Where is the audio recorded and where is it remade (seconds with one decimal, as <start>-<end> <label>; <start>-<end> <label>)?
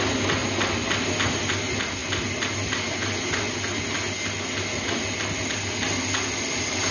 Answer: 0.0-6.9 recorded